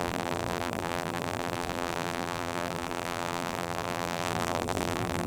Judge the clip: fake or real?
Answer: fake